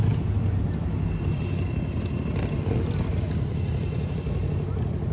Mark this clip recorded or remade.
recorded